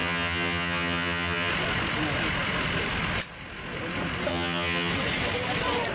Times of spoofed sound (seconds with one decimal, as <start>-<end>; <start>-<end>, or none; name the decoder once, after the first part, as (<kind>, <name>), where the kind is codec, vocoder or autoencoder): 0.0-1.5 (vocoder, HiFi-GAN); 4.3-4.9